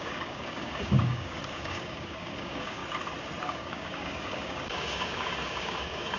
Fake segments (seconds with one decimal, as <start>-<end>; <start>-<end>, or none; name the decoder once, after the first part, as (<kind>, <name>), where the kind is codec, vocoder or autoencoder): 0.0-2.8 (codec, DAC); 3.4-6.2